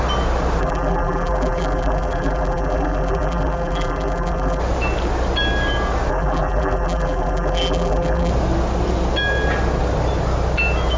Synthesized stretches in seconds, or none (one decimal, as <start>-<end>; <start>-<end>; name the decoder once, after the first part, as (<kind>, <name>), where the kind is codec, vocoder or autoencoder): 0.6-4.6 (vocoder, BigVGAN v2); 6.1-8.3